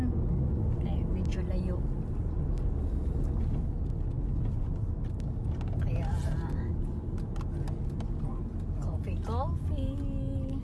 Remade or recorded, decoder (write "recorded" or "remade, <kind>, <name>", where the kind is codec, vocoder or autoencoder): recorded